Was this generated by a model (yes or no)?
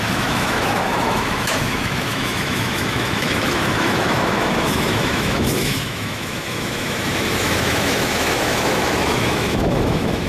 yes